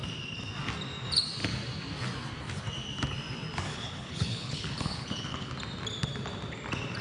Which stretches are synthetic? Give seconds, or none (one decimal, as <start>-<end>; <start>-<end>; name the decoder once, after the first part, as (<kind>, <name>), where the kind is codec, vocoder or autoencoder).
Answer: 3.7-5.5 (codec, HILCodec)